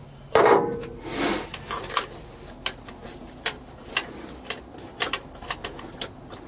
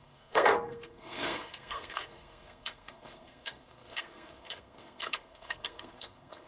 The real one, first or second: first